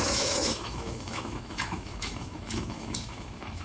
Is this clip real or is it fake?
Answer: fake